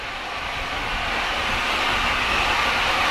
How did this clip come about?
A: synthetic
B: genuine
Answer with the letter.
B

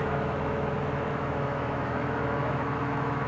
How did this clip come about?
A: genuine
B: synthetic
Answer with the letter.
B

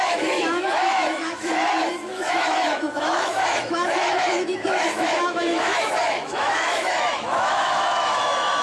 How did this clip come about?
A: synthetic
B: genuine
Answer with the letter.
A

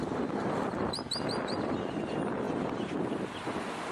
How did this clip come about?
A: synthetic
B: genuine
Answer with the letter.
B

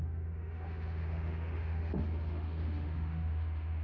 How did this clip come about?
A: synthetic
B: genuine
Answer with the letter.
A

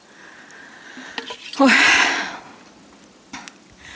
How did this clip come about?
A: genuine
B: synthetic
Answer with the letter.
A